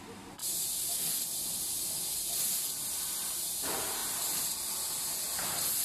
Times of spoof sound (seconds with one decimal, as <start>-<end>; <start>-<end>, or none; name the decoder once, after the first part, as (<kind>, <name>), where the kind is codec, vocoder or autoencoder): none